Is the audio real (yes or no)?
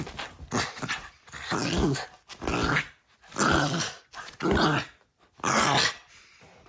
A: yes